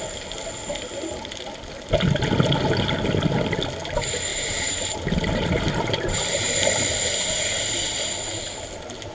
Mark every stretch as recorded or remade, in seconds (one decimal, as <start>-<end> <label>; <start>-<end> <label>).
0.0-4.3 recorded; 4.3-7.4 remade; 7.4-9.1 recorded